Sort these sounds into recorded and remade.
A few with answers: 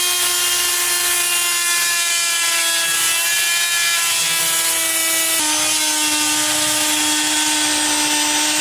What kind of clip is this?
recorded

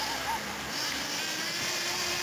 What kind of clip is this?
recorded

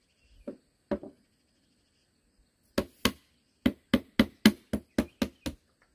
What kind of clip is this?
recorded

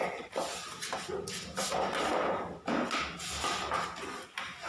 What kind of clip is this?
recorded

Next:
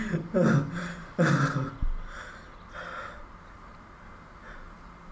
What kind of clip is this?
recorded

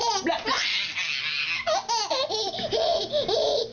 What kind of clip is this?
recorded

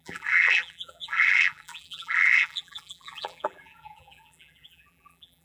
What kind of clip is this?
remade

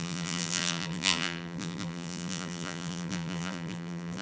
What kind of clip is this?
remade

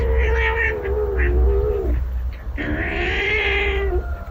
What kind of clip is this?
recorded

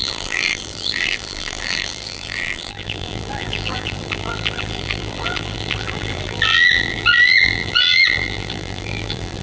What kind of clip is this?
remade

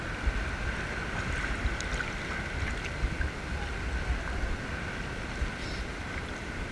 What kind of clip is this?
recorded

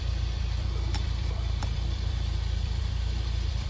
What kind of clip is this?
remade